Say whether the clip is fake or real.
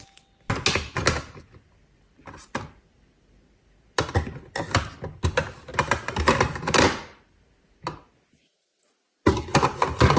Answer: real